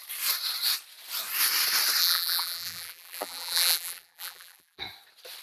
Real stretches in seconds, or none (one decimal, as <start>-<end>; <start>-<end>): 0.0-2.0; 4.8-5.4